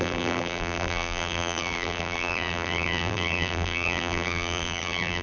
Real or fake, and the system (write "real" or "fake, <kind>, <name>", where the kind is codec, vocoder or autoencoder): fake, vocoder, BigVGAN v2